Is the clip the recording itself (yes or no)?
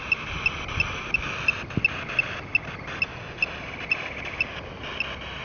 yes